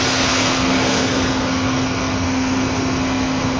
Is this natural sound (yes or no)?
no